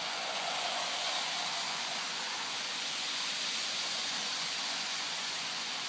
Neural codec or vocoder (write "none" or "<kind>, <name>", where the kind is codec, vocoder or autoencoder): vocoder, Vocos